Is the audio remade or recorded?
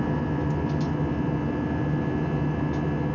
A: recorded